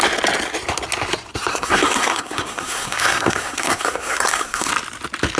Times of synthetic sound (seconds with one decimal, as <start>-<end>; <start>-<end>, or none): 1.5-4.7